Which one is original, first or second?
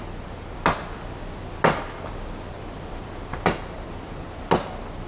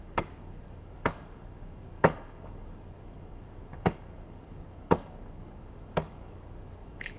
first